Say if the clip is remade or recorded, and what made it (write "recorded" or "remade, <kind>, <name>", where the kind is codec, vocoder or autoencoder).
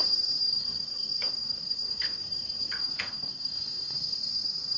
remade, codec, SNAC